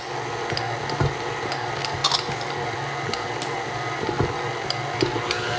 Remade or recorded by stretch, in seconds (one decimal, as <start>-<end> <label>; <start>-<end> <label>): 0.0-5.6 recorded